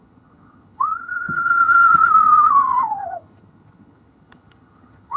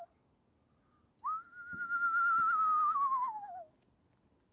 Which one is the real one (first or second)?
second